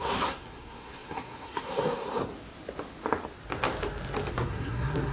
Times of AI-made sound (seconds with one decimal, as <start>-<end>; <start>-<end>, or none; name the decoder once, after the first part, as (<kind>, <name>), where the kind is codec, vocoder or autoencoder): 0.0-2.3 (codec, SNAC); 4.3-5.1